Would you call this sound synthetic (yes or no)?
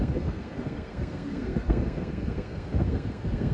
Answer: yes